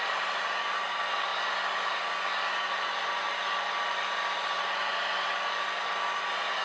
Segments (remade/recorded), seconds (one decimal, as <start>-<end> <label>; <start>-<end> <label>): 0.0-6.6 recorded